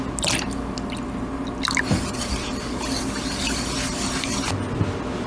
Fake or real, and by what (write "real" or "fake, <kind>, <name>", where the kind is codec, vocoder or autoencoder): real